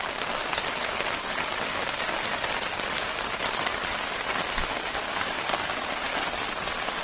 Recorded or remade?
recorded